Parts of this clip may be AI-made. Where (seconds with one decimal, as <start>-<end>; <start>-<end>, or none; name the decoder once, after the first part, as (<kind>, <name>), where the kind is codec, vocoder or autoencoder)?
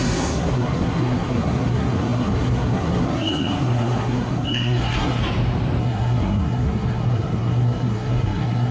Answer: 0.0-5.2 (codec, SNAC); 5.8-8.7